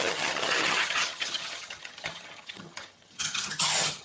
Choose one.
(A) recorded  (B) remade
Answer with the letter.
B